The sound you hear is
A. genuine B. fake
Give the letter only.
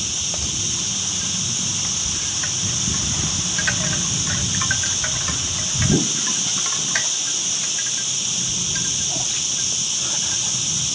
A